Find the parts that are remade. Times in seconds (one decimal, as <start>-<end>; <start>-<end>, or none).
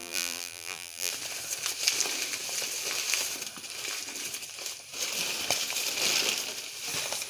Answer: 0.0-1.1